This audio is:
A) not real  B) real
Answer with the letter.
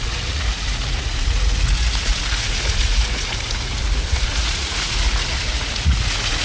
A